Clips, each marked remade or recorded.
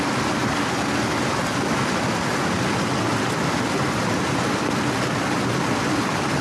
recorded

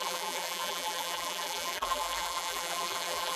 remade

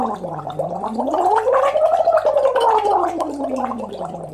remade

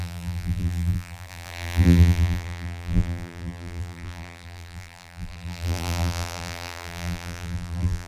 remade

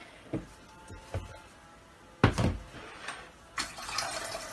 recorded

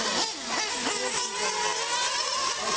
recorded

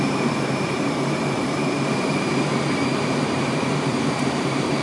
remade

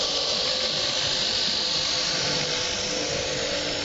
recorded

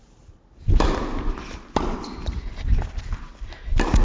recorded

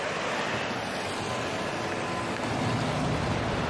recorded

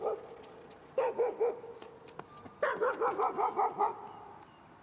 recorded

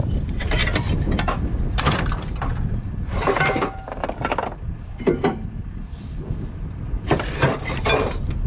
remade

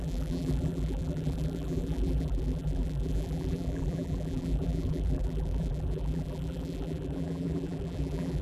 remade